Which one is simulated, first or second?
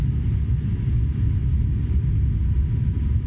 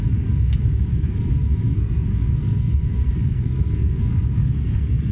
second